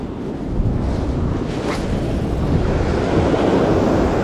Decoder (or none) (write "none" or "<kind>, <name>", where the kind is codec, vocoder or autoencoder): none